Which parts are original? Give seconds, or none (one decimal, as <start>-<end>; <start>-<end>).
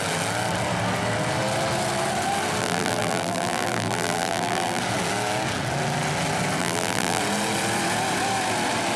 0.0-2.6; 4.8-6.6; 7.2-9.0